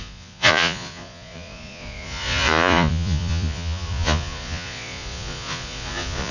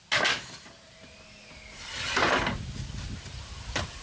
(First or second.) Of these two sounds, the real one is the second